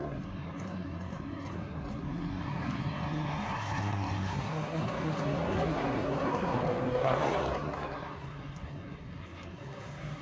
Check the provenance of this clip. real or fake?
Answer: fake